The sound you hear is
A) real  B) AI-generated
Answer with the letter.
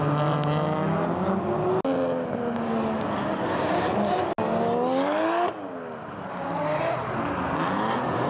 A